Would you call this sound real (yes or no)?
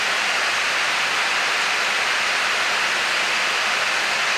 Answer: yes